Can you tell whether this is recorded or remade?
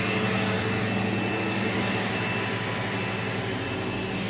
recorded